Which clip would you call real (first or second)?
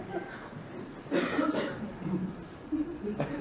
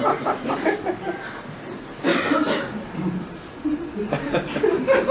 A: second